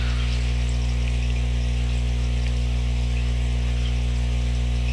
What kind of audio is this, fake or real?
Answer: real